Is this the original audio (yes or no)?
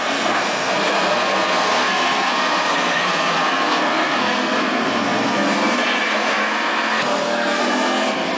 no